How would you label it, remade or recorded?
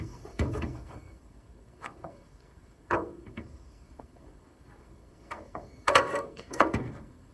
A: remade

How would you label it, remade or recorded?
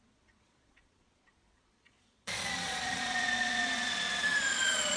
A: remade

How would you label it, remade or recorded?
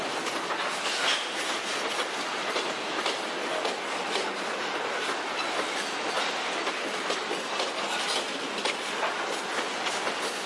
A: recorded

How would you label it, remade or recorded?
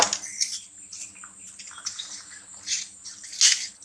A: recorded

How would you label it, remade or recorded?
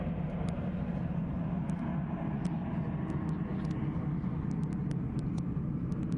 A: recorded